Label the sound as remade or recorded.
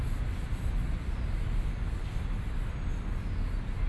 recorded